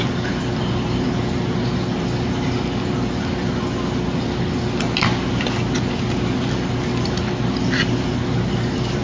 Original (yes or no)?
yes